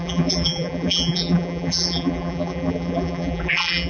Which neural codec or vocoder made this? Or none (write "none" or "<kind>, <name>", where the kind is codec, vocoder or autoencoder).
vocoder, BigVGAN v2